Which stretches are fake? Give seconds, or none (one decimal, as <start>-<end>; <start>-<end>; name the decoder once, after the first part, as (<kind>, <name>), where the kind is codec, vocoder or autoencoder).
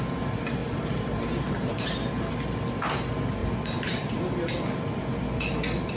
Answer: 0.6-1.8 (vocoder, BigVGAN v2); 3.4-4.1